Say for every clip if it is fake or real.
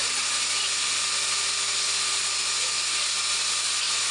real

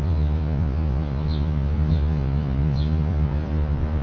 fake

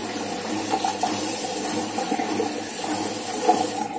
real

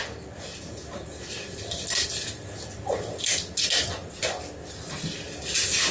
real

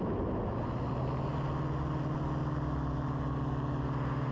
real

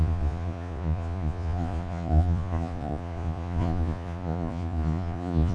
fake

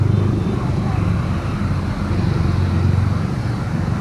real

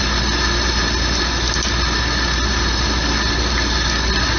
real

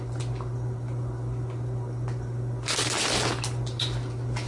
real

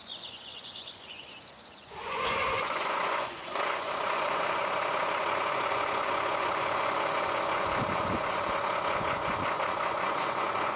fake